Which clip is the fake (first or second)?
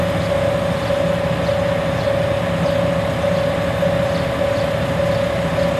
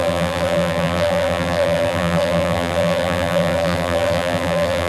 second